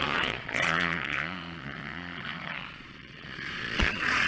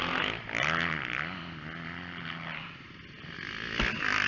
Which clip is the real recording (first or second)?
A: second